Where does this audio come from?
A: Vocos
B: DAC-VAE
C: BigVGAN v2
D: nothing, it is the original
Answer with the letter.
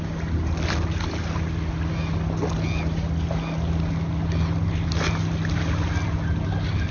D